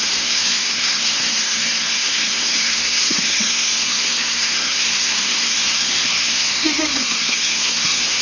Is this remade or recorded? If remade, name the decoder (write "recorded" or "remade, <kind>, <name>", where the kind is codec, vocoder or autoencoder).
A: remade, codec, SNAC